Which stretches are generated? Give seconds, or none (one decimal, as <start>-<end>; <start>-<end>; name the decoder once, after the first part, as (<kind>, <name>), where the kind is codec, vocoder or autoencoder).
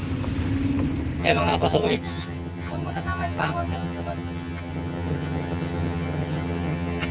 1.2-7.1 (vocoder, HiFi-GAN)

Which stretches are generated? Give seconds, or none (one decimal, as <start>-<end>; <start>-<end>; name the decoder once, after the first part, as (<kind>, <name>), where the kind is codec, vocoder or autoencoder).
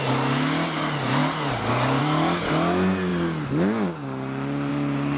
none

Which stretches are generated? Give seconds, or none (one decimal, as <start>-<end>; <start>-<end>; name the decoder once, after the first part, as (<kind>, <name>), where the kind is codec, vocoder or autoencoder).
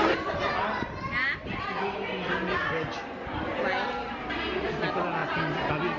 none